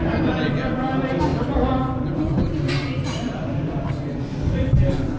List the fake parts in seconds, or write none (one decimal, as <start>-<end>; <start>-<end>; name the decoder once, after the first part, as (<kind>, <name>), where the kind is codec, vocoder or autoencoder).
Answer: none